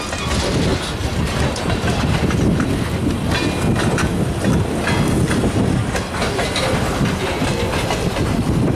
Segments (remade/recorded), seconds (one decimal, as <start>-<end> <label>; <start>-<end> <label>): 0.0-8.8 recorded